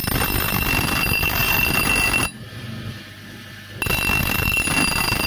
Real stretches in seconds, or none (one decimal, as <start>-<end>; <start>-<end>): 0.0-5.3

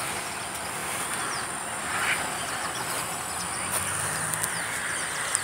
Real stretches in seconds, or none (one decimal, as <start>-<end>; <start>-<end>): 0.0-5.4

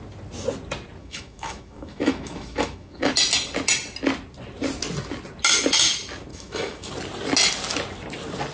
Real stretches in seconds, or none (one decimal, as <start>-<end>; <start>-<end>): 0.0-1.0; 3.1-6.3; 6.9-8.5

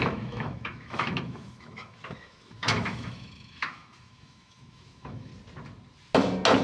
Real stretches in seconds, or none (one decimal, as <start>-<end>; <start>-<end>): 5.3-6.6

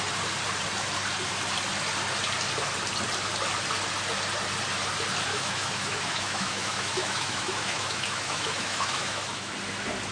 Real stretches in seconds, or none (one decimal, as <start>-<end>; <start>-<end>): 0.0-5.3; 9.5-10.1

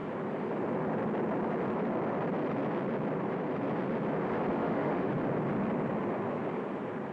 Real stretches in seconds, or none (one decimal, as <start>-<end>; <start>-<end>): 0.0-4.6; 5.1-7.1